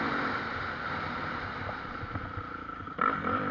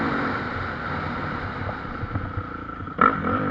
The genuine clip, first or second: second